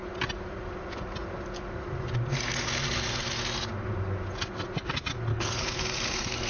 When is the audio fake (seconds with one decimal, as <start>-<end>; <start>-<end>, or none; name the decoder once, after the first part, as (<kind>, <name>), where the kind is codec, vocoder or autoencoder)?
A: 5.3-5.8 (codec, HILCodec)